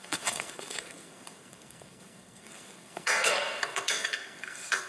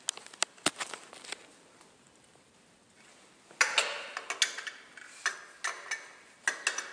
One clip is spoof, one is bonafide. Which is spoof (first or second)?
first